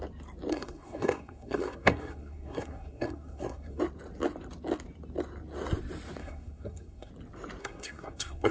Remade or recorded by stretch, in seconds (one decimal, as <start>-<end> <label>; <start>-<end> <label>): 0.0-0.5 recorded; 0.5-3.8 remade; 3.8-6.2 recorded; 6.2-7.1 remade; 7.1-7.6 recorded; 7.6-8.5 remade